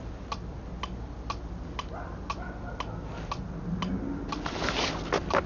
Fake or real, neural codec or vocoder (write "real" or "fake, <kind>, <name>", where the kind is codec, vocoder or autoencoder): real